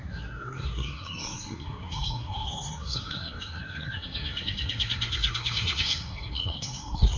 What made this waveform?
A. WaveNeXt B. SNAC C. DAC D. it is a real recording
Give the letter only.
B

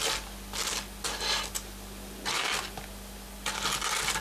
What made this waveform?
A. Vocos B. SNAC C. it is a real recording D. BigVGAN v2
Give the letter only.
C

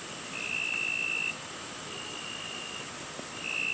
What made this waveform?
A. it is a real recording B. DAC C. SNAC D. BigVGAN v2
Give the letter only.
A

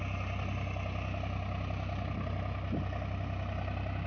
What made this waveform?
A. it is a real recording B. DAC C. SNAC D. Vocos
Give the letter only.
A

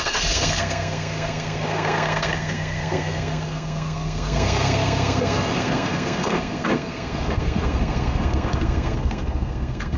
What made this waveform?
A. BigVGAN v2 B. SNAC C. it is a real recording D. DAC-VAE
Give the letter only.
B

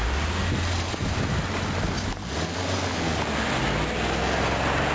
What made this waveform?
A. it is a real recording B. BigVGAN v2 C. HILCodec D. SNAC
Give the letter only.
A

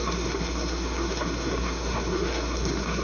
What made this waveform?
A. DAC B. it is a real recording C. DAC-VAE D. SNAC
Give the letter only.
D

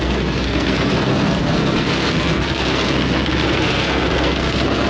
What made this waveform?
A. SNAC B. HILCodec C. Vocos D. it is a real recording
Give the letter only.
A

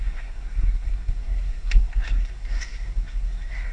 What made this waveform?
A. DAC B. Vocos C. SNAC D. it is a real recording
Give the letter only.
C